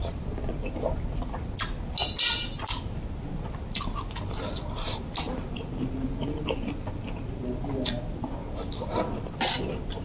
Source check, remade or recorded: recorded